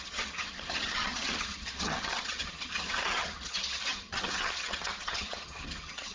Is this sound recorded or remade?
remade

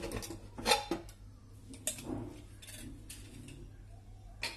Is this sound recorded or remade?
recorded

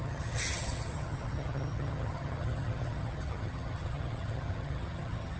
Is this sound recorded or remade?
remade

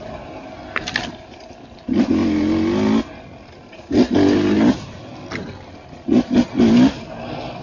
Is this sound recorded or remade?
recorded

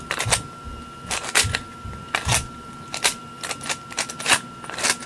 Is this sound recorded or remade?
recorded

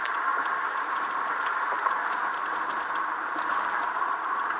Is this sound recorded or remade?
remade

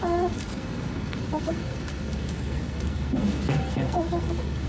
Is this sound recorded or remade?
remade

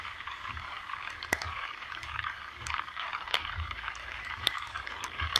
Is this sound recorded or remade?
remade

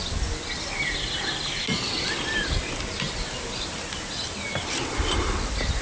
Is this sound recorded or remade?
recorded